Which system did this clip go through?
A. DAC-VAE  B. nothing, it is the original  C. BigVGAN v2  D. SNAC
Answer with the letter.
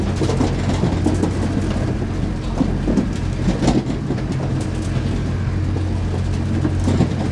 B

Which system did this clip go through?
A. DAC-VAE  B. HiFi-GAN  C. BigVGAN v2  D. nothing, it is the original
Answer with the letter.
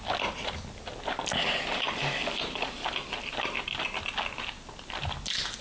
D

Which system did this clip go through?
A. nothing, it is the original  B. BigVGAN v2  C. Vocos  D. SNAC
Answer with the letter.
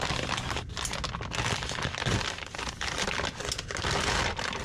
A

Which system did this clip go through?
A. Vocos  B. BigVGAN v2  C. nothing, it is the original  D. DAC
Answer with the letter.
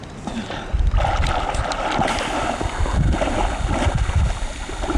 C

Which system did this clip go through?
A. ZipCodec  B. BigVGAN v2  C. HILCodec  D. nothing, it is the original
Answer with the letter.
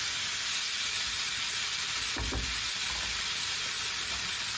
D